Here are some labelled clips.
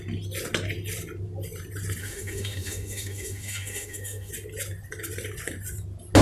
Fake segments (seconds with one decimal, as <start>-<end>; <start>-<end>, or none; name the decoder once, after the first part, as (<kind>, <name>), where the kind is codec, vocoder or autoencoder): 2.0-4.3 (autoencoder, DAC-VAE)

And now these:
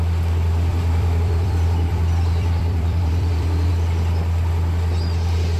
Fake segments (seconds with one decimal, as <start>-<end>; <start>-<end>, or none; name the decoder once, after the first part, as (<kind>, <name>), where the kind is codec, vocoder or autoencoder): 0.7-3.7 (vocoder, BigVGAN v2)

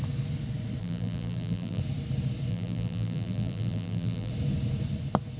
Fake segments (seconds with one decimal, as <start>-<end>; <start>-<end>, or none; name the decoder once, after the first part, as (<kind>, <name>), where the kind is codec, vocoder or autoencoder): 0.8-1.8 (vocoder, BigVGAN v2); 2.5-4.3

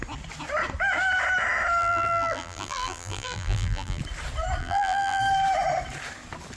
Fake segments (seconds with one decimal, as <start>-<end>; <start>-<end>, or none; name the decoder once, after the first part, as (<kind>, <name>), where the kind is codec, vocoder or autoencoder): 1.8-4.0 (vocoder, BigVGAN v2); 4.6-5.2

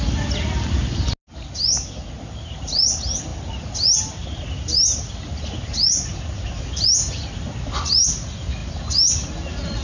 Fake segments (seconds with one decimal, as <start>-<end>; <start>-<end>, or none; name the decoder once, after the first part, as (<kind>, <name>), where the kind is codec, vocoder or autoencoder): none

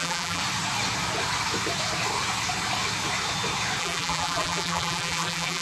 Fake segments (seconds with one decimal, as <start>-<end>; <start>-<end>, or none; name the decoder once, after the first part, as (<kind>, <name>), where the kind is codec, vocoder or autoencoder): 0.0-0.4 (vocoder, BigVGAN v2); 3.8-5.6